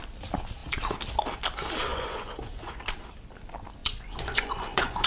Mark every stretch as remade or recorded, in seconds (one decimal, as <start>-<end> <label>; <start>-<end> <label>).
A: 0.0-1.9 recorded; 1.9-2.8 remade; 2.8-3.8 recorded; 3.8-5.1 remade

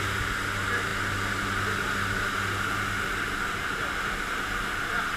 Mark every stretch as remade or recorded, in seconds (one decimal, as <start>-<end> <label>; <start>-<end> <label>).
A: 0.0-5.2 recorded

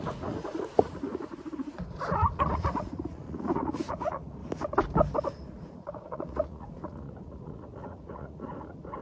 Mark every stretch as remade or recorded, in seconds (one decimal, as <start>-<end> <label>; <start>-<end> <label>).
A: 0.0-4.4 remade; 4.4-5.2 recorded; 5.2-9.0 remade